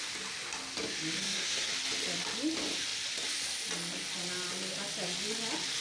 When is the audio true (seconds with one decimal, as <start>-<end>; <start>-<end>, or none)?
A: 0.0-1.2; 1.7-5.8